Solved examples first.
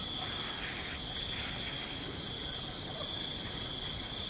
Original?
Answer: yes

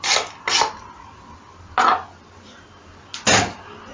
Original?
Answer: yes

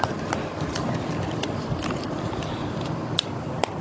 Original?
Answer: yes